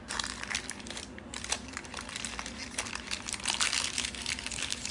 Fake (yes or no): no